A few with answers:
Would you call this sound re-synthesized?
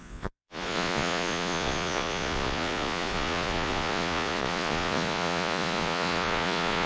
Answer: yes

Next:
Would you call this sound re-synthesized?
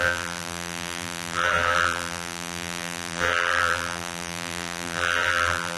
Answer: yes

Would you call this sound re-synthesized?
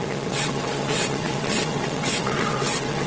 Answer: yes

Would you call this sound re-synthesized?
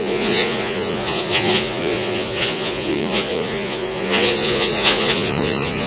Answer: yes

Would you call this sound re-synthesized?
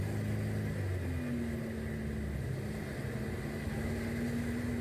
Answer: no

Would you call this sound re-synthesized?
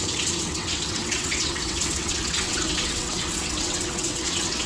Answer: yes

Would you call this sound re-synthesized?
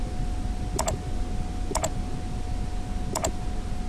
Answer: no